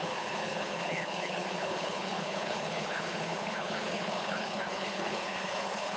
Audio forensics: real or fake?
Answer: fake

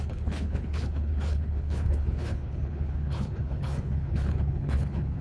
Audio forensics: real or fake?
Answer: fake